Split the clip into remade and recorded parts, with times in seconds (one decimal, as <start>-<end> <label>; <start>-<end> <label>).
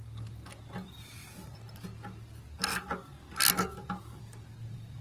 0.0-5.0 recorded